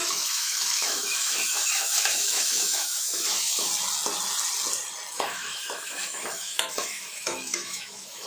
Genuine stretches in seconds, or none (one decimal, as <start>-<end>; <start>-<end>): 3.7-5.1